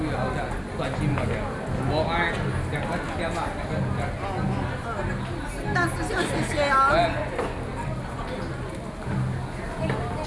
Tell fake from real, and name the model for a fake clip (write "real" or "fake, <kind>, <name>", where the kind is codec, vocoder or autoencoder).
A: real